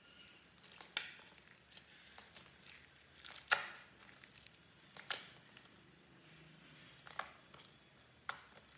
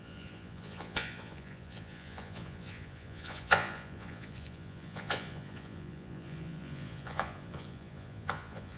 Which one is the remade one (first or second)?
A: second